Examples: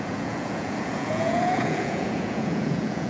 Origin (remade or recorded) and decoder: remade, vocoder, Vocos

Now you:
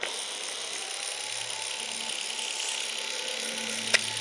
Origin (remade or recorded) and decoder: recorded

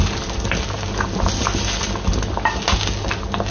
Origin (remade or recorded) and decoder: recorded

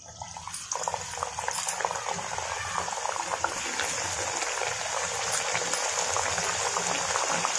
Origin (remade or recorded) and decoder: recorded